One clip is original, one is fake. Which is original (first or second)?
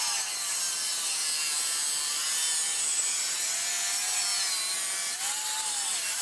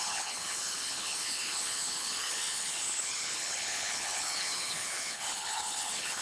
first